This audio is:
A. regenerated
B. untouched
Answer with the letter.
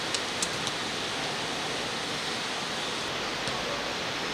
B